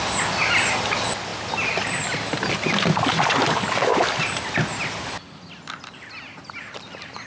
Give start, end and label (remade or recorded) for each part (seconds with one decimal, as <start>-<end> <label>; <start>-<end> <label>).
0.0-7.3 recorded